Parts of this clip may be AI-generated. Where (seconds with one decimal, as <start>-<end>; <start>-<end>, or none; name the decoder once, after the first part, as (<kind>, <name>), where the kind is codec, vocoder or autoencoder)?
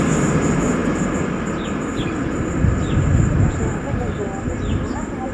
none